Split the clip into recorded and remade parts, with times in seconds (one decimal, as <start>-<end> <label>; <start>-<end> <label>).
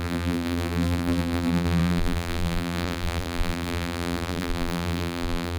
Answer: 0.0-5.6 remade